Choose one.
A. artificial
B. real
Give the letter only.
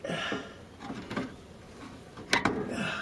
B